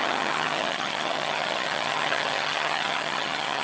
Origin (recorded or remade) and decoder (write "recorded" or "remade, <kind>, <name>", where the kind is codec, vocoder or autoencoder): remade, vocoder, HiFi-GAN